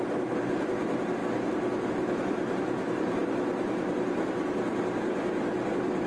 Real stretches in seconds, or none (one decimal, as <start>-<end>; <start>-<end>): 0.0-6.1